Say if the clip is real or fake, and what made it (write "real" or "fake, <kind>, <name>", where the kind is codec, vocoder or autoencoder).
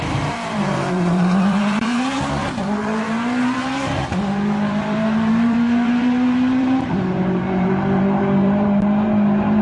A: fake, vocoder, BigVGAN v2